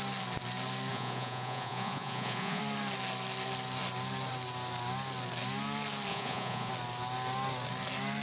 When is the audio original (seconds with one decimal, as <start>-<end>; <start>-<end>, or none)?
0.0-0.9; 2.6-6.1; 6.7-8.2